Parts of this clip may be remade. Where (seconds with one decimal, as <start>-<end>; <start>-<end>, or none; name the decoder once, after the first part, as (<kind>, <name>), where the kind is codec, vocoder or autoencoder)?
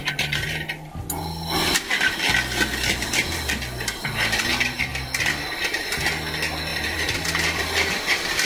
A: 4.9-6.0 (vocoder, BigVGAN v2); 6.7-8.5